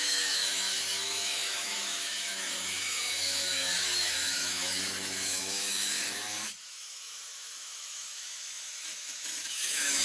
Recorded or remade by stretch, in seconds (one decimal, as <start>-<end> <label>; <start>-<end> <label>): 0.0-10.0 remade